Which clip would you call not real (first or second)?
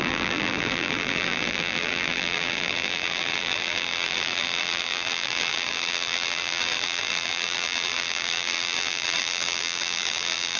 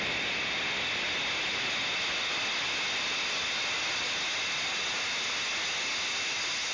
first